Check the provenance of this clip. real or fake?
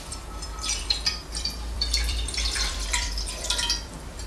fake